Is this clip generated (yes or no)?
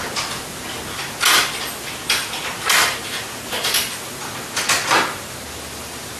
no